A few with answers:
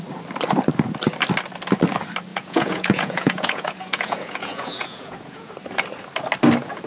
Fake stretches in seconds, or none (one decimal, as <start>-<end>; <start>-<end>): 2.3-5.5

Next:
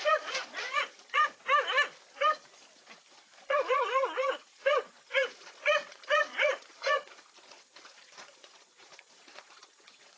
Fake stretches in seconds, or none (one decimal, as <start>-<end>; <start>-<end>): 0.0-1.2; 3.1-10.2

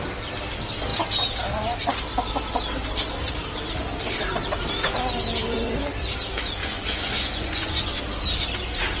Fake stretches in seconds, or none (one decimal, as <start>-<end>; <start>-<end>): 6.6-8.0

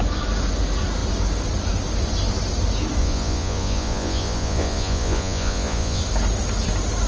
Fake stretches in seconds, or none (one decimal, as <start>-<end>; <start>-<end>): 3.0-6.0